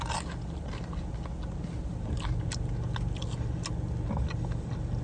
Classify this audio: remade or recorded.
recorded